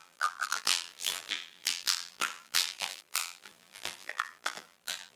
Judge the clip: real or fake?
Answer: fake